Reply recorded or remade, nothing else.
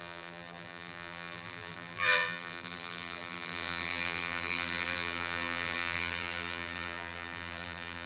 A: remade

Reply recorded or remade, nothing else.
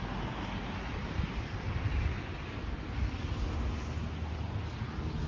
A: recorded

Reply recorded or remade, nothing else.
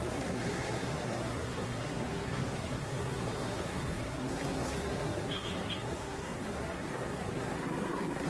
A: remade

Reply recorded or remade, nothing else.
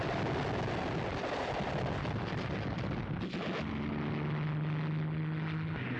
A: recorded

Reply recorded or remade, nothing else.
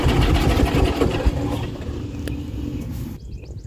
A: recorded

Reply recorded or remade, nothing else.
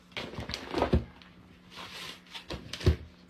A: recorded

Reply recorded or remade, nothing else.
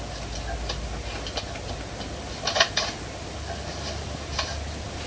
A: recorded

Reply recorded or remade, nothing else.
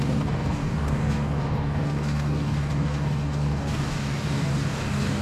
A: remade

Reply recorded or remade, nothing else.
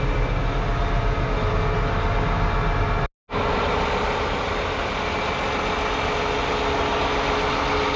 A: recorded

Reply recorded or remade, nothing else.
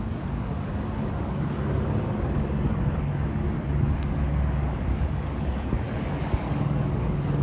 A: remade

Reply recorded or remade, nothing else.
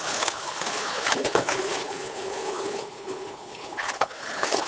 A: remade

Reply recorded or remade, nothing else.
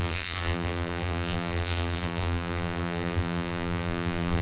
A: remade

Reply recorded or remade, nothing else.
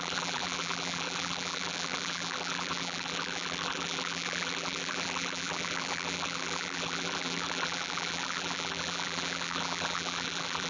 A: remade